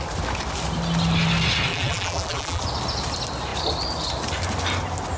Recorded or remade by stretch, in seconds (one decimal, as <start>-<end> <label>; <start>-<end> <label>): 0.0-1.7 recorded; 1.7-2.6 remade; 2.6-5.2 recorded